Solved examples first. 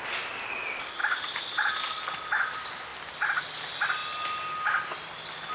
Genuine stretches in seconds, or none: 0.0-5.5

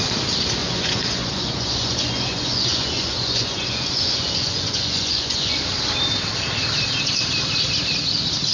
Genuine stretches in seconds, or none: 0.0-0.6; 5.6-8.5

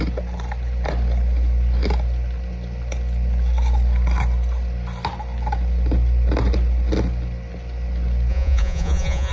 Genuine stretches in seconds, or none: 0.0-8.3

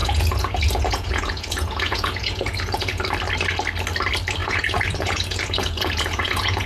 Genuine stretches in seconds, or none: 3.0-4.4

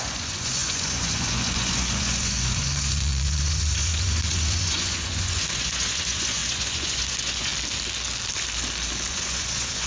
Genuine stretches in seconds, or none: 7.5-9.1

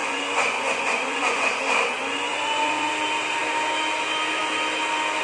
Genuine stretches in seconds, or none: 1.6-2.3; 2.9-5.2

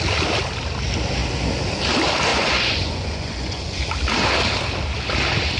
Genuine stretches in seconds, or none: 0.0-2.3; 3.8-5.6